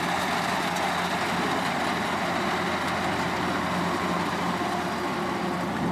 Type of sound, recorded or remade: recorded